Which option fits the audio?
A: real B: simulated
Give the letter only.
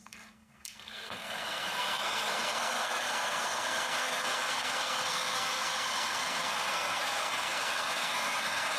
B